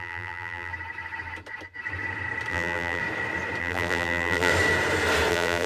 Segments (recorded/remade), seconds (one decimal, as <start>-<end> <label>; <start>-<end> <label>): 0.0-0.7 remade; 0.7-2.5 recorded; 2.5-3.0 remade; 3.0-3.6 recorded; 3.6-4.5 remade; 4.5-5.3 recorded; 5.3-5.7 remade